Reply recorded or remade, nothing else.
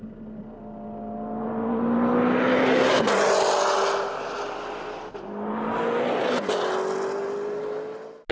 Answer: recorded